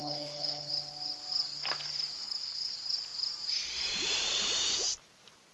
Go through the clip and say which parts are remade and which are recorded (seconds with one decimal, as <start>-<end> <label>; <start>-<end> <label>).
0.0-0.7 remade; 0.7-2.2 recorded; 2.2-2.7 remade; 2.7-5.5 recorded